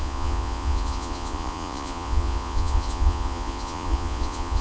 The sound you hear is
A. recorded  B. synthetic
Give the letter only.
B